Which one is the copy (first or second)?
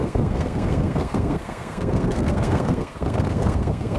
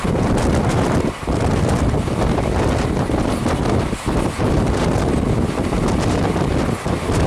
first